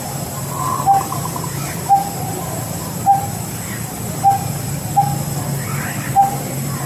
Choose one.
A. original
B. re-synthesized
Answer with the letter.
A